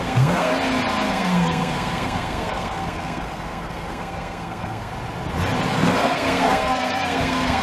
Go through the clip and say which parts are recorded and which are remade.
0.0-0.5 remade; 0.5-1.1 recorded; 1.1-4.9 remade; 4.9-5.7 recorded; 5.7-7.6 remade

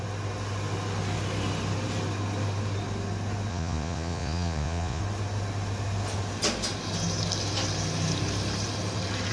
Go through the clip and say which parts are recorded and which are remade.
0.0-3.5 recorded; 3.5-5.0 remade; 5.0-9.3 recorded

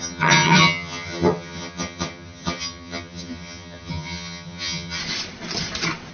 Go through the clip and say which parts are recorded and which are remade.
0.0-5.0 remade; 5.0-6.1 recorded

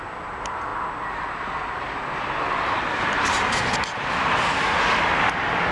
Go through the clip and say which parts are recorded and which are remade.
0.0-5.7 recorded